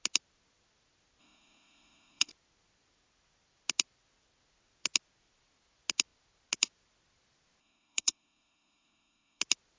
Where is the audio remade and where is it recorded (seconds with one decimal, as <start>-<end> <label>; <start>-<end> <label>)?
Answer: 0.0-1.2 recorded; 1.2-2.3 remade; 2.3-7.6 recorded; 7.6-9.4 remade; 9.4-9.8 recorded